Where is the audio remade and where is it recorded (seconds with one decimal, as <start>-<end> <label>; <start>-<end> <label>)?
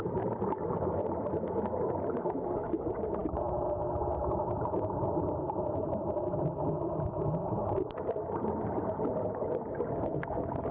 0.0-10.7 recorded